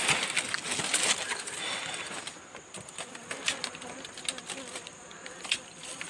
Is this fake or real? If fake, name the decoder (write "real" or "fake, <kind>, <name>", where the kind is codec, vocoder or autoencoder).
real